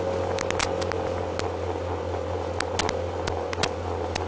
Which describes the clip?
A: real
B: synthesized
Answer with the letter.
A